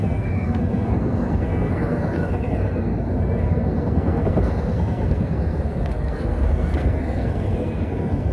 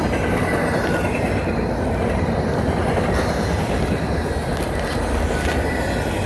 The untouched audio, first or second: second